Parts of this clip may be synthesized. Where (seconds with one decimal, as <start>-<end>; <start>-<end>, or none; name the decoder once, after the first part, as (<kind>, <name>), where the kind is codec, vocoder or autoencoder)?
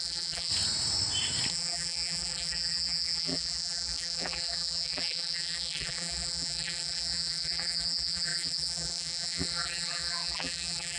0.0-0.5 (vocoder, BigVGAN v2); 1.5-11.0